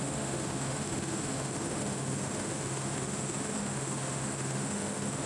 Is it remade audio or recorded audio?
remade